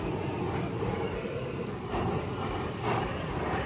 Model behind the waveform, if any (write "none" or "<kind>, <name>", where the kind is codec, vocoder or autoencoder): vocoder, BigVGAN v2